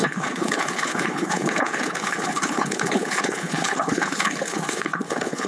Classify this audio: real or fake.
fake